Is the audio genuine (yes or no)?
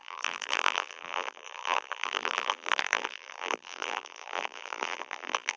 no